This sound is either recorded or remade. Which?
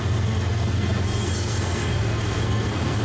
remade